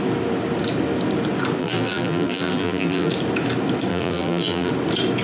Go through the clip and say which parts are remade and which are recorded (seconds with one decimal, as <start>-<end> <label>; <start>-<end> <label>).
0.0-1.6 recorded; 1.6-3.1 remade; 3.1-3.9 recorded; 3.9-4.7 remade; 4.7-5.2 recorded

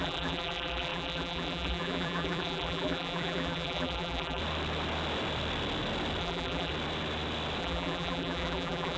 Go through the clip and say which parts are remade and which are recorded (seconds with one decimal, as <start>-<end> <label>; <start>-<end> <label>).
0.0-4.4 remade; 4.4-6.2 recorded; 6.2-6.7 remade; 6.7-7.6 recorded; 7.6-9.0 remade

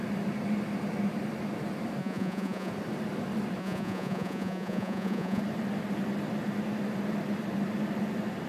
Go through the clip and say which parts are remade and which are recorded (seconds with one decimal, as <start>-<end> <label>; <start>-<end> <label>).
0.0-2.0 recorded; 2.0-2.7 remade; 2.7-3.6 recorded; 3.6-5.4 remade; 5.4-8.5 recorded

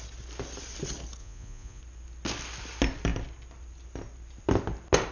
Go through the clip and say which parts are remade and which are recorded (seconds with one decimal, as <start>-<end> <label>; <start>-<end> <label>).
0.0-1.2 recorded; 1.2-1.8 remade; 1.8-5.1 recorded

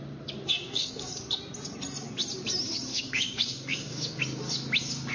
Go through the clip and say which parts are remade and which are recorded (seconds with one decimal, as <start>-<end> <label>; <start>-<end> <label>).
0.0-0.6 recorded; 0.6-1.1 remade; 1.1-2.9 recorded; 2.9-4.2 remade; 4.2-5.1 recorded

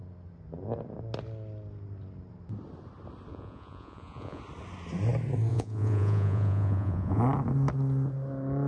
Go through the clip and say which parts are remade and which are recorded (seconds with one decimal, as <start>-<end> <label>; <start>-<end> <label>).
0.0-3.3 recorded; 3.3-4.4 remade; 4.4-5.5 recorded; 5.5-7.2 remade; 7.2-8.7 recorded

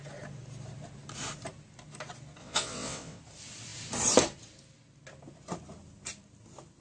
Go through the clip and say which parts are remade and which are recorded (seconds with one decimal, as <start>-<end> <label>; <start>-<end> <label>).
0.0-2.4 recorded; 2.4-3.2 remade; 3.2-6.8 recorded